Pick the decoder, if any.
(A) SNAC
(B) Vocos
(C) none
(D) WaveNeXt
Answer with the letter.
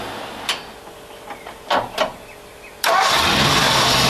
C